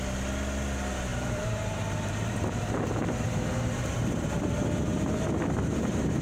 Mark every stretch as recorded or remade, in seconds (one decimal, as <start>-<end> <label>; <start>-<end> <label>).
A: 0.0-1.1 recorded; 1.1-4.8 remade; 4.8-6.2 recorded